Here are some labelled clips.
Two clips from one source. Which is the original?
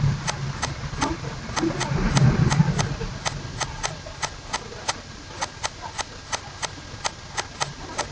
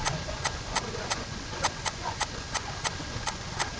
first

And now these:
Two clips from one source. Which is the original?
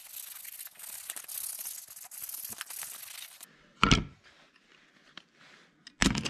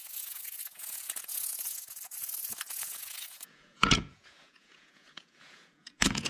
first